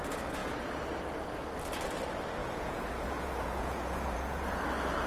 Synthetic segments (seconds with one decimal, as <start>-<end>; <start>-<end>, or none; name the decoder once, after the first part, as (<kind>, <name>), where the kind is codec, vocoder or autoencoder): 2.4-4.6 (vocoder, Vocos)